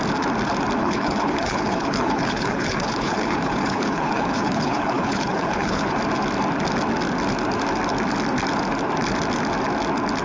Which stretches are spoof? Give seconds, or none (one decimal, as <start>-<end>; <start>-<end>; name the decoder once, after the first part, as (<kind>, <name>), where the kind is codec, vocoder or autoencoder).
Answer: 0.8-6.0 (codec, HILCodec)